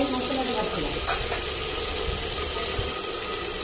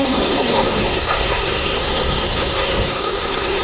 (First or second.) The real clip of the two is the first